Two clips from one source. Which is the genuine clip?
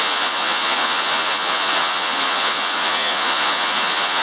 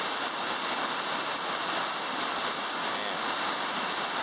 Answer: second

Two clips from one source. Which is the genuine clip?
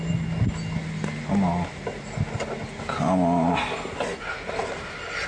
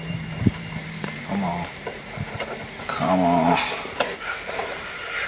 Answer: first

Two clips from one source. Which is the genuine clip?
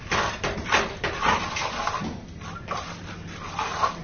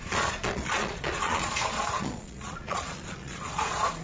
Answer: first